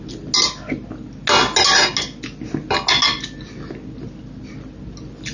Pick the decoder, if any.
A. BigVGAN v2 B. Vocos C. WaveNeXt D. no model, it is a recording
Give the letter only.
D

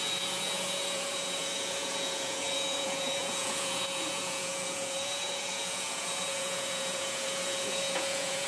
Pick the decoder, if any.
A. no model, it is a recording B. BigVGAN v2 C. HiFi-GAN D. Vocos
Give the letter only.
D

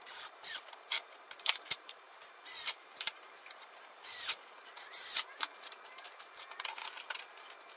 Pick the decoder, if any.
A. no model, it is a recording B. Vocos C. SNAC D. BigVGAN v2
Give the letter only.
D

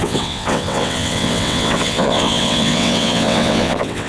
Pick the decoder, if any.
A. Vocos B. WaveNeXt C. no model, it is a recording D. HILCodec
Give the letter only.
B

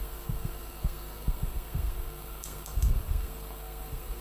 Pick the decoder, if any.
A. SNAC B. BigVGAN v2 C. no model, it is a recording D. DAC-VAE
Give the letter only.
A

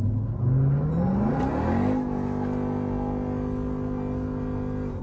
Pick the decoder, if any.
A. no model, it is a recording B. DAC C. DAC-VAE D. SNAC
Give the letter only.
A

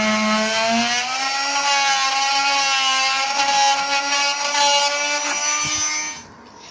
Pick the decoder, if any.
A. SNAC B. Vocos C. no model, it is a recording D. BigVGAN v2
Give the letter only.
C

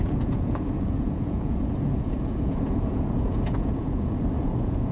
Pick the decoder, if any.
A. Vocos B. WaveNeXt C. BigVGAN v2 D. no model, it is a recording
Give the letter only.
A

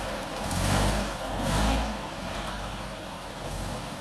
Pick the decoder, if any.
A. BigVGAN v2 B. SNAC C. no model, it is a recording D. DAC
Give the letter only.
D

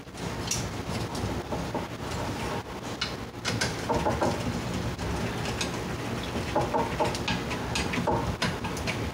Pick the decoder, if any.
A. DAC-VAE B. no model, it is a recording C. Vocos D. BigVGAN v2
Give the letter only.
B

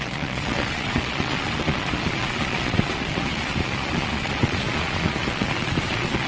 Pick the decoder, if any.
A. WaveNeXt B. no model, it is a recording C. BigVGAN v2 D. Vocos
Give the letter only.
D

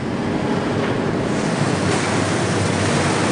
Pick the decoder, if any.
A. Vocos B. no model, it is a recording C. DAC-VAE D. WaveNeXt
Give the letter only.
B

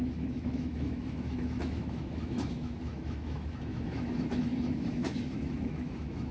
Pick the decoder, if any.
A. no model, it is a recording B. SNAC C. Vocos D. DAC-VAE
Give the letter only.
D